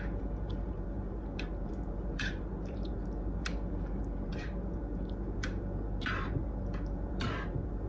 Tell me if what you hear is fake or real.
fake